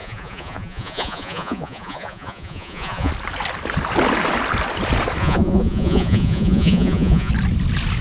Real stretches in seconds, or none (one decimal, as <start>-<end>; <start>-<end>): 3.1-5.2; 7.3-8.0